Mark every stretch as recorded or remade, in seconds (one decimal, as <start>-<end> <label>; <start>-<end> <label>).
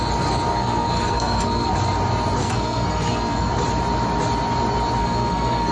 0.0-0.5 recorded; 0.5-1.7 remade; 1.7-2.4 recorded; 2.4-3.5 remade; 3.5-5.0 recorded; 5.0-5.7 remade